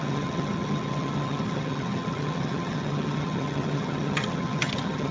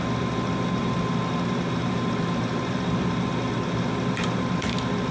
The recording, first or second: second